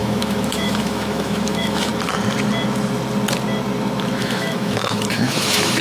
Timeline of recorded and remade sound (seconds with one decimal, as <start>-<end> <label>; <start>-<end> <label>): 0.0-1.9 remade; 1.9-4.2 recorded; 4.2-5.8 remade